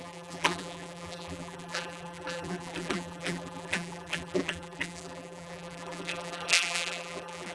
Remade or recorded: remade